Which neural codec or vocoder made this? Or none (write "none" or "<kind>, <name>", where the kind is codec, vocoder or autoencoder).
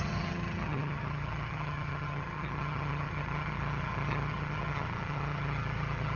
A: vocoder, HiFi-GAN